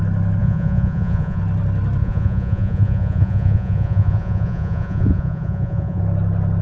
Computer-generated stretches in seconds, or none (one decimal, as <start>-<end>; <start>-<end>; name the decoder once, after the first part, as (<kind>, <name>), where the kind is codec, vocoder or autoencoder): 0.4-1.4 (vocoder, Vocos); 2.0-6.0